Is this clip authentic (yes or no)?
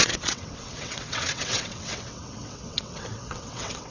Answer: no